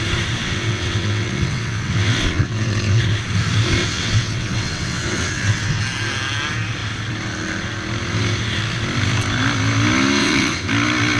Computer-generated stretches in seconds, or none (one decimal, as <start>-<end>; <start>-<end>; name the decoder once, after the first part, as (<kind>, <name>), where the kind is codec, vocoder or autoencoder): 0.4-3.0 (vocoder, WaveNeXt); 3.8-5.8; 10.2-10.7